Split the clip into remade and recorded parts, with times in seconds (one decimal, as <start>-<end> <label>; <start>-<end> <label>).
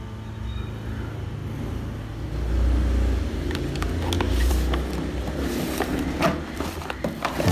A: 0.0-7.5 recorded